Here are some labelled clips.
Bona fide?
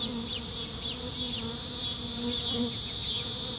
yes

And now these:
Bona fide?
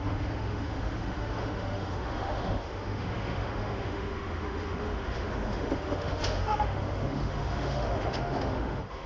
no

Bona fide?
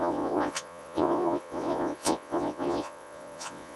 no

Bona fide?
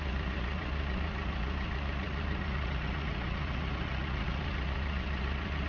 no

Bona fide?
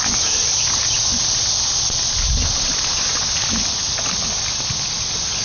yes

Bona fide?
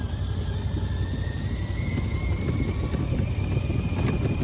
yes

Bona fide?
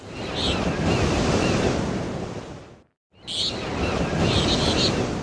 yes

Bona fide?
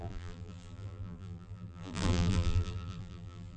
no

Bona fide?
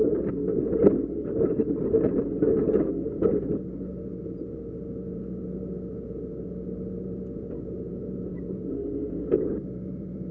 yes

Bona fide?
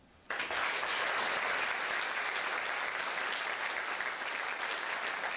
yes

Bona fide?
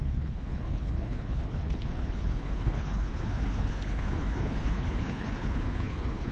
no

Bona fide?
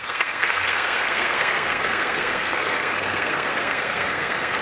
no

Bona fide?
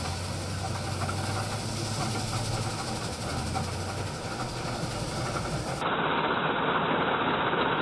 yes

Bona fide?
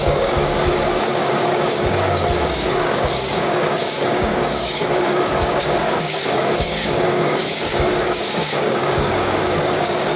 no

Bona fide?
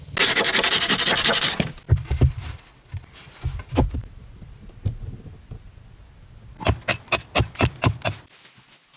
yes